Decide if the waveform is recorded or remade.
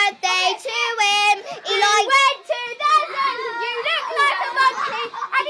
recorded